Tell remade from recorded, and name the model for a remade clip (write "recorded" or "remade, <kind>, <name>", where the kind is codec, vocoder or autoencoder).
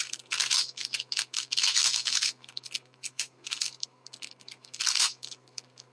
remade, codec, SNAC